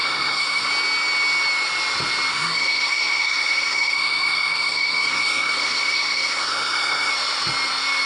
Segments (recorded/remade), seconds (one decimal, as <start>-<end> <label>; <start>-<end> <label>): 0.0-0.7 remade; 0.7-2.3 recorded; 2.3-7.1 remade; 7.1-8.1 recorded